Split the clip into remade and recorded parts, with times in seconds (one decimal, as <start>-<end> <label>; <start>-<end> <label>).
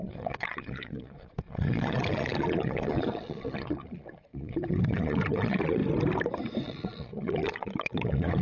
0.0-5.8 remade; 5.8-6.6 recorded; 6.6-8.4 remade